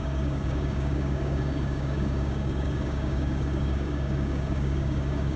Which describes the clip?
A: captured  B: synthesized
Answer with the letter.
B